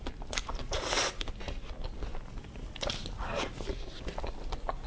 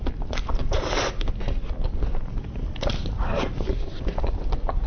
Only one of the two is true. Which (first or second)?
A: first